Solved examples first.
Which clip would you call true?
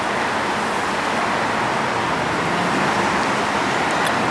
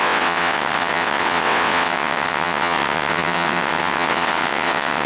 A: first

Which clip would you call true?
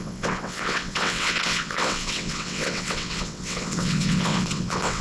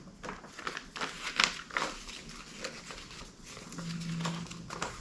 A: second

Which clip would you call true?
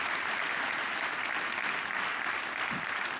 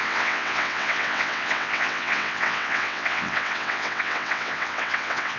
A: first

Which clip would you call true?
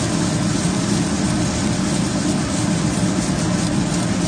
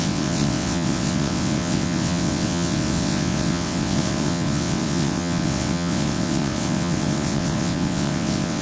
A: first